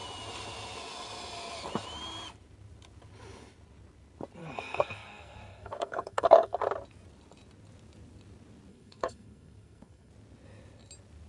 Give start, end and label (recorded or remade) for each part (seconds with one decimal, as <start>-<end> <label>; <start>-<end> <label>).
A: 0.0-4.4 recorded; 4.4-6.6 remade; 6.6-8.7 recorded; 8.7-10.1 remade; 10.1-11.3 recorded